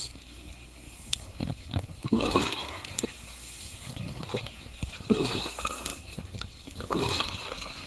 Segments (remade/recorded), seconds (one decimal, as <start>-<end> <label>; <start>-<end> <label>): 0.0-7.9 remade